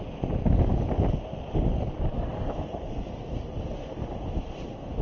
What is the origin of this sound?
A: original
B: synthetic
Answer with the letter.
A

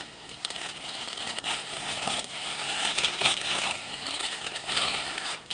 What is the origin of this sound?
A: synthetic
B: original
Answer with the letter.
A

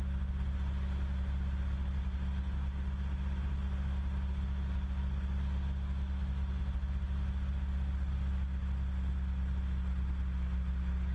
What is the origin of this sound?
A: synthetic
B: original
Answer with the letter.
B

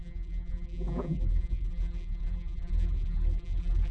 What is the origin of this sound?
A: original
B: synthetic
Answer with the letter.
B